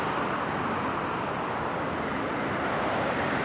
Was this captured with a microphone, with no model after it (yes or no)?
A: yes